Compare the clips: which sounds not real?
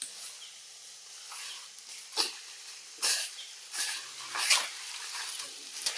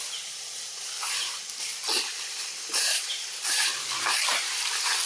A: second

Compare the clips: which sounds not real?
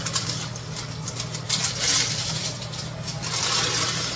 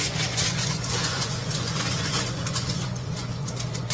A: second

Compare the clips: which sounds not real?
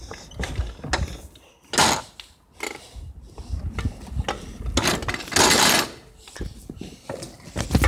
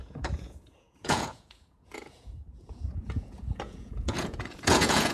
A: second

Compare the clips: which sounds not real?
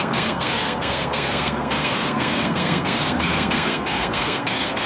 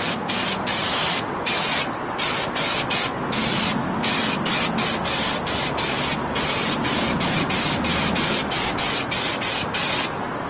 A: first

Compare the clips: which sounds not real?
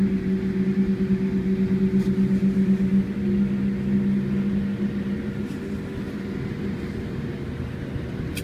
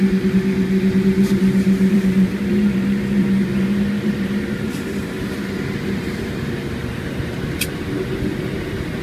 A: second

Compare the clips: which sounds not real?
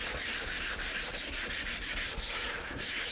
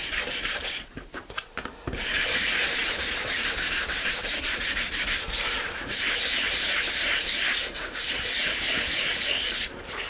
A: second